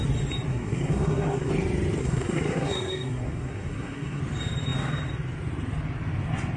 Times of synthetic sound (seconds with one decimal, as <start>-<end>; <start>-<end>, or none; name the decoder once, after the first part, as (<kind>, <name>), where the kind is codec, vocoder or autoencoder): 0.5-1.5 (codec, SNAC); 2.0-4.2